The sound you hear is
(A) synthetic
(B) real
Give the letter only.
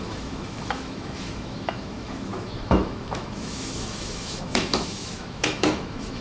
A